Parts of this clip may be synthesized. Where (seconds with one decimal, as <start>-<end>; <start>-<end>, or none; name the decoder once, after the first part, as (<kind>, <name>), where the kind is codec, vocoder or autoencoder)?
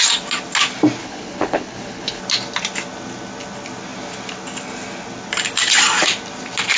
1.0-2.2 (codec, HILCodec)